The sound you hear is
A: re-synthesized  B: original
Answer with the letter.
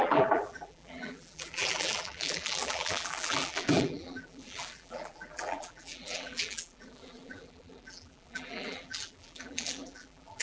A